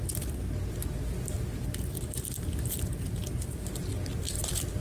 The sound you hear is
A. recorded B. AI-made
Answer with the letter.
A